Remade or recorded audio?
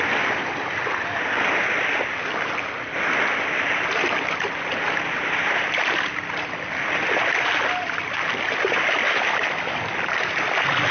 recorded